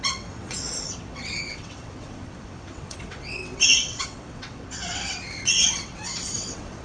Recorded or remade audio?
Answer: remade